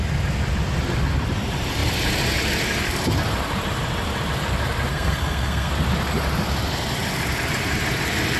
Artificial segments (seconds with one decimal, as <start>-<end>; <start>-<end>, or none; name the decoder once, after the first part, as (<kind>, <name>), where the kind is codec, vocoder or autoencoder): 4.9-5.7 (codec, SNAC)